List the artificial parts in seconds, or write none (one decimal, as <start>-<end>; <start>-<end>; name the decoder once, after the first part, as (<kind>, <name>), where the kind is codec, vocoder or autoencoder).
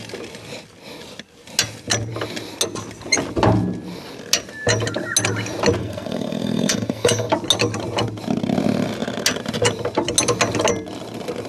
5.8-7.3 (codec, SNAC)